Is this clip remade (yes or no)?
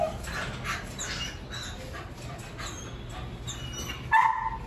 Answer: no